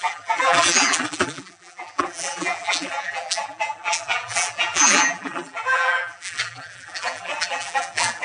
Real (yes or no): no